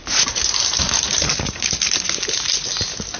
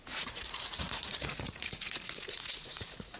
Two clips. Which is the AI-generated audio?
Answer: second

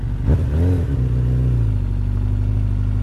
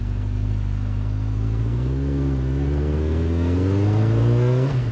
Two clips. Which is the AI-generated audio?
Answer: second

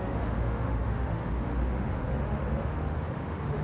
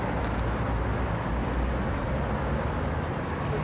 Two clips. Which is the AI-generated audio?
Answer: first